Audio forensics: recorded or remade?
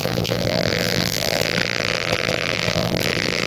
remade